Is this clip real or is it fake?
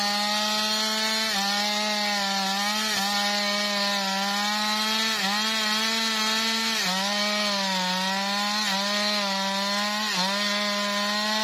real